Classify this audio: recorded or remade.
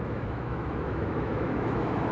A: remade